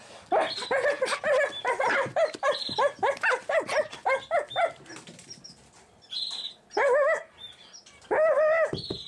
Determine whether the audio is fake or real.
real